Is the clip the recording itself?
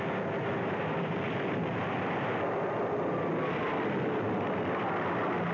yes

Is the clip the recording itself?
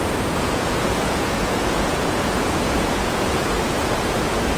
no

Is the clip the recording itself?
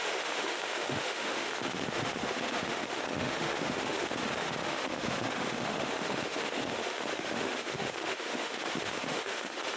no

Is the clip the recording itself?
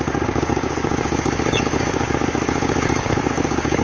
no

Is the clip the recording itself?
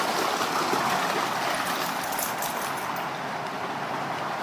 yes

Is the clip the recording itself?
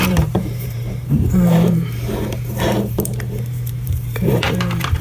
no